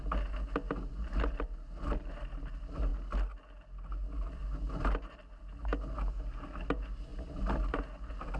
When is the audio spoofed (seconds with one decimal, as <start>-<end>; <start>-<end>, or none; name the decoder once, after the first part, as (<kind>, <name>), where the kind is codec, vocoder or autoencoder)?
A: none